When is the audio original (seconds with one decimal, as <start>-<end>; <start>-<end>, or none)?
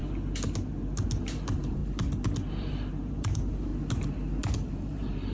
0.0-1.2; 1.8-2.5; 3.7-4.7